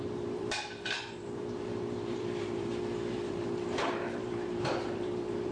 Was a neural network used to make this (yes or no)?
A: yes